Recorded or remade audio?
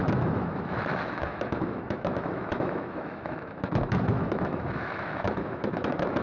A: remade